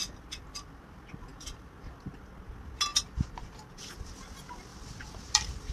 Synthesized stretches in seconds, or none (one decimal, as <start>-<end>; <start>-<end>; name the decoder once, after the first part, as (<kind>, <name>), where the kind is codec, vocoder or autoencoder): 2.9-3.7 (vocoder, BigVGAN v2); 4.7-5.7